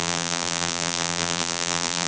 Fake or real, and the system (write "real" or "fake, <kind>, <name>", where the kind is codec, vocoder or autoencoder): fake, vocoder, BigVGAN v2